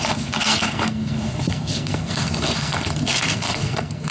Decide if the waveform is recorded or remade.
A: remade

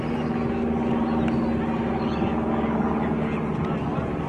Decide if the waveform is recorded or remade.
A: recorded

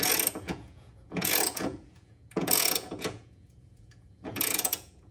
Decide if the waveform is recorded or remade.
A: remade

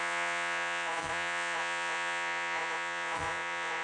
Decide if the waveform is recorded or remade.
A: remade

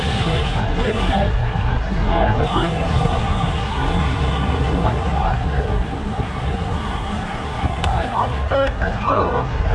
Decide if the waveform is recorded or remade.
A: remade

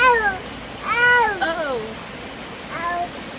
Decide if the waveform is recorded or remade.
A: recorded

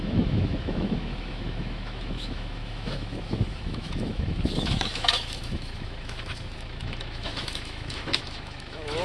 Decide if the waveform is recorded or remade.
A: remade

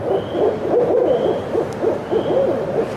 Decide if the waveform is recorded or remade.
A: recorded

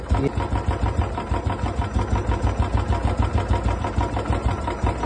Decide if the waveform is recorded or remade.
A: recorded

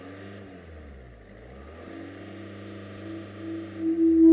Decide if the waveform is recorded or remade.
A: recorded